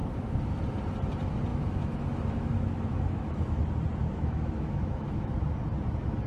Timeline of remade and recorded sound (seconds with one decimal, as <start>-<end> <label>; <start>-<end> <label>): 0.0-0.6 remade; 0.6-1.5 recorded; 1.5-3.6 remade; 3.6-4.0 recorded; 4.0-5.3 remade; 5.3-6.3 recorded